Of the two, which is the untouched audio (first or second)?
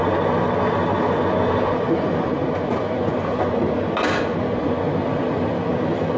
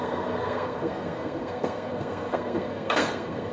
first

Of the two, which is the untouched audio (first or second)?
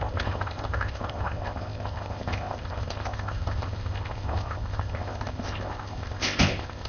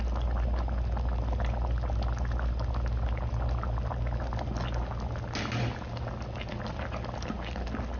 second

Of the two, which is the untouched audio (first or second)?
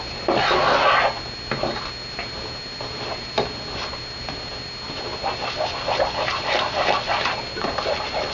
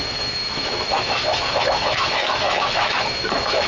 first